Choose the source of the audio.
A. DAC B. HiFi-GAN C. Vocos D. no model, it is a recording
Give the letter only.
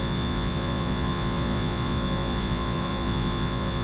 C